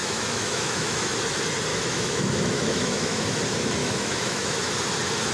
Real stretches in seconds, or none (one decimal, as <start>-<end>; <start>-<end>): 1.1-1.7; 3.4-3.8; 4.7-5.3